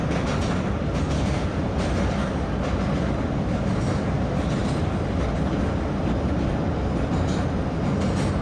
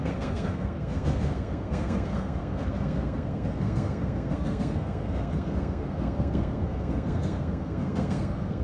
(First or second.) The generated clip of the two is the second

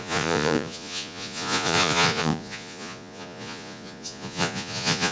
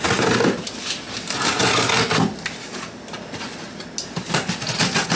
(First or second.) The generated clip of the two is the first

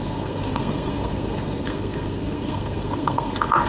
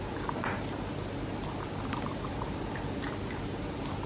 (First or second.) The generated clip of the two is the first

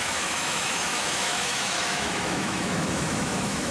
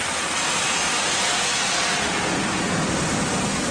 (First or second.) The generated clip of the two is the first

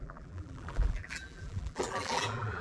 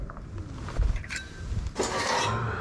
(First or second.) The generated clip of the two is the first